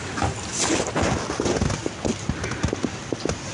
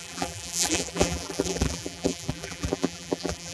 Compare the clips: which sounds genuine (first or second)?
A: first